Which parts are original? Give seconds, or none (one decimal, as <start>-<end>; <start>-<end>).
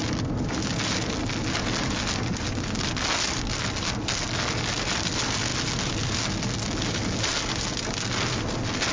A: 0.0-8.9